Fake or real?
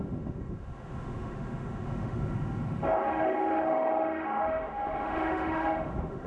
fake